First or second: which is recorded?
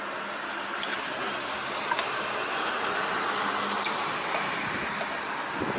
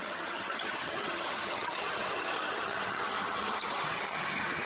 first